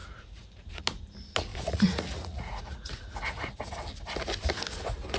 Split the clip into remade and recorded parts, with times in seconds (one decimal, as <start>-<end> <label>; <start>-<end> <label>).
0.0-0.8 remade; 0.8-1.5 recorded; 1.5-3.5 remade; 3.5-5.2 recorded